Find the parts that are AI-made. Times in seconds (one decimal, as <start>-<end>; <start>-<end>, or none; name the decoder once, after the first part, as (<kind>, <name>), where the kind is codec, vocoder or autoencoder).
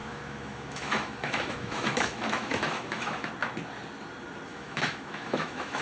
0.0-3.3 (autoencoder, DAC-VAE); 4.5-5.8